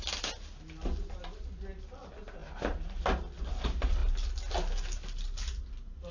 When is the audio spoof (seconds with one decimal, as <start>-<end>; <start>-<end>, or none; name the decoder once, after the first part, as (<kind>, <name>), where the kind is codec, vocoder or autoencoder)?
none

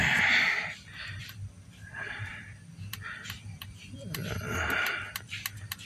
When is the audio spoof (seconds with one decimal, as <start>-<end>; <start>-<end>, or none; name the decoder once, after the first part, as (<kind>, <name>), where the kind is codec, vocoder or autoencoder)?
none

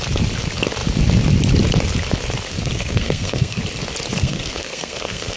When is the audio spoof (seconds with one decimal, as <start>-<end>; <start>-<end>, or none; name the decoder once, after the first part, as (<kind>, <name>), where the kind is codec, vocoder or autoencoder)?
2.5-3.6 (codec, SNAC); 4.2-5.4

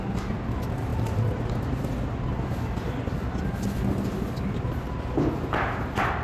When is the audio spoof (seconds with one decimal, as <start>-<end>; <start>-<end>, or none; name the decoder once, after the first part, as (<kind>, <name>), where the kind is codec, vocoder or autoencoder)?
none

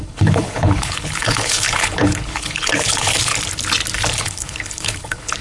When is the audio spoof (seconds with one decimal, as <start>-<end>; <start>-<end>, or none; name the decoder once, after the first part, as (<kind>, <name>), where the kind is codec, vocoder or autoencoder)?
0.0-3.3 (codec, HILCodec); 4.1-5.4

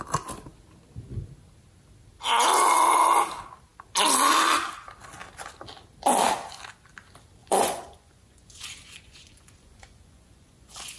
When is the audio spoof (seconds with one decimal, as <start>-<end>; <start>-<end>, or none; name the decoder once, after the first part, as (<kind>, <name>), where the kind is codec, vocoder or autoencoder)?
7.4-11.0 (vocoder, Vocos)